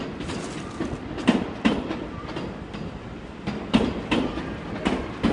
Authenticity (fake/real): real